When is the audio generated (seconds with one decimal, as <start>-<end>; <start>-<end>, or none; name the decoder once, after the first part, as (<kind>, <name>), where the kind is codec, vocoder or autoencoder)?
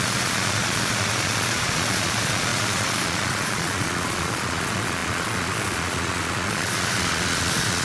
0.0-7.8 (vocoder, Vocos)